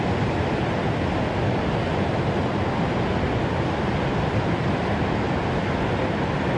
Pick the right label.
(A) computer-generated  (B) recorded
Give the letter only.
B